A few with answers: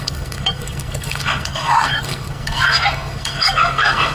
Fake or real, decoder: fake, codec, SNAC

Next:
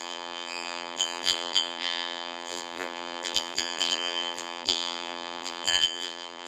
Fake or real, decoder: fake, vocoder, BigVGAN v2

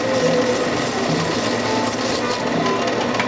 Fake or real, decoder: real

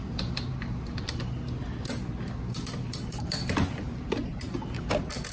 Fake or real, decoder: real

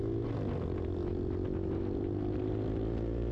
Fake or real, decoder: real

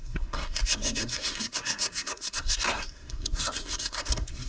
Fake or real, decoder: fake, codec, SNAC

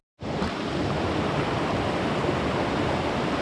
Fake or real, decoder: real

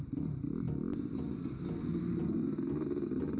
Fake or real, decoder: real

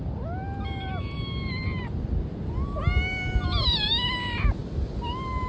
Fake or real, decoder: real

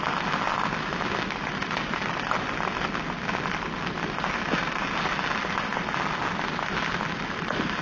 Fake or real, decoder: real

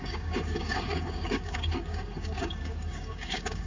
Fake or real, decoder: fake, codec, DAC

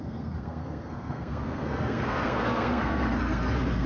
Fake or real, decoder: fake, codec, SNAC